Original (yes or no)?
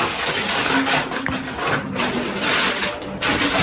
yes